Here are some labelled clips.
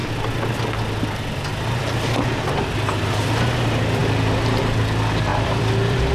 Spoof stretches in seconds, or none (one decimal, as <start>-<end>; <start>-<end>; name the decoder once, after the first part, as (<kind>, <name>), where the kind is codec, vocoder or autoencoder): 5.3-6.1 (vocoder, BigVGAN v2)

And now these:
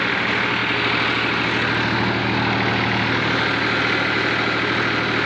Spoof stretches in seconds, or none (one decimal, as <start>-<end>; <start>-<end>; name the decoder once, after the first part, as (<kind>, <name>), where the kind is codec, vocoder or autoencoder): none

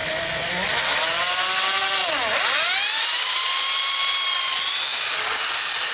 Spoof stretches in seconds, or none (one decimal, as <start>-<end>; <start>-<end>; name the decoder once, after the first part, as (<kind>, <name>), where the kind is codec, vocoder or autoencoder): 0.0-1.2 (vocoder, BigVGAN v2); 4.9-5.9

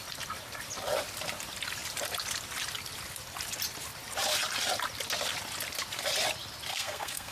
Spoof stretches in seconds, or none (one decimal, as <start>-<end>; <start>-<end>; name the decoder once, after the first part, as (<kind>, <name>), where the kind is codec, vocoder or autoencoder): 6.7-7.3 (codec, SNAC)